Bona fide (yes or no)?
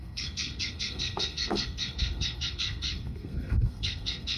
no